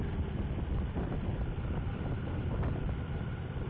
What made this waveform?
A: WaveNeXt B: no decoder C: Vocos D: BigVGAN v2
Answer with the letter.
B